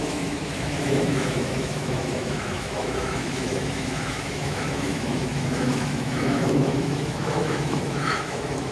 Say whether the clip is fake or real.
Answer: fake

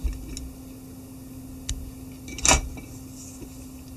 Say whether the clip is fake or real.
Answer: real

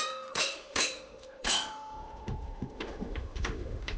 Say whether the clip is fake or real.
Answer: fake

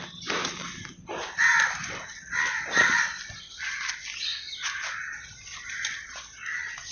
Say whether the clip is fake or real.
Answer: real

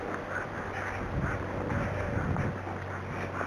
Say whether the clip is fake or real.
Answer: real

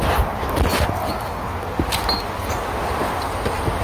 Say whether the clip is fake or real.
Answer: real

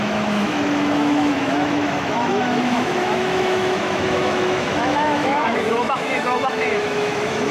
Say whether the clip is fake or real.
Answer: fake